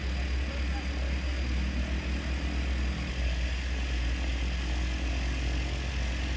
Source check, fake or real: real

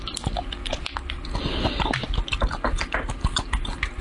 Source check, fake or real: real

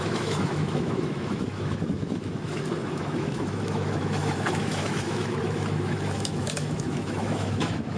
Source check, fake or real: fake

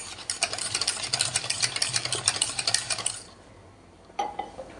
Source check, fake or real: real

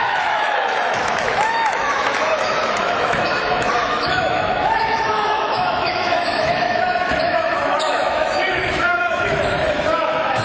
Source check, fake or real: fake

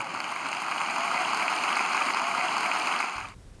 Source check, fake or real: real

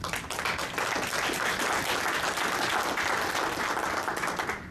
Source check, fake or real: real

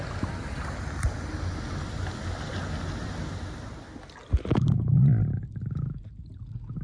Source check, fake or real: real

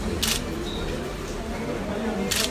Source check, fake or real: real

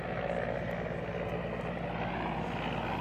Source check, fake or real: real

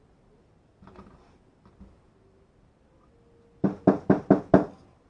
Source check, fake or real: real